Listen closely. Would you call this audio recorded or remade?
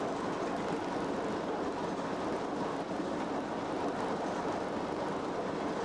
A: recorded